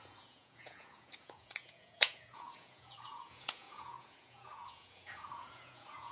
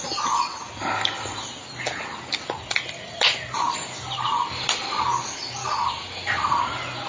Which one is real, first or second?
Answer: second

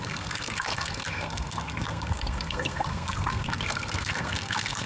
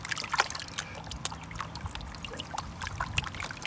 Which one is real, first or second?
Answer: second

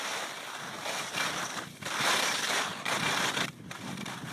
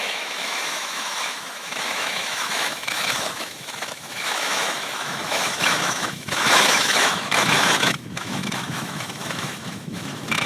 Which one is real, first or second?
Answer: first